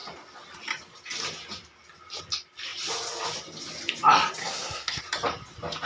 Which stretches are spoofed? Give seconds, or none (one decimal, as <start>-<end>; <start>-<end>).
4.4-5.0